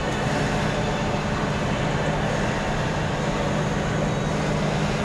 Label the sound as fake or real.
real